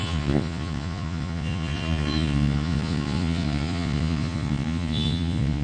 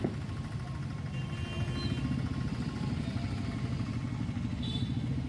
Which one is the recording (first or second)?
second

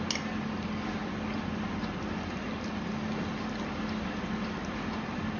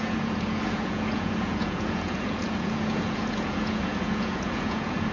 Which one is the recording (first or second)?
first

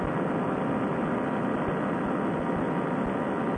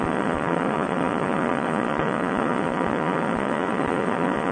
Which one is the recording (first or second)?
first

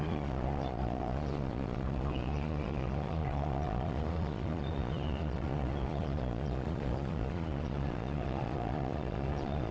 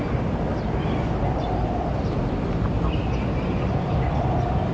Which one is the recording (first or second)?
second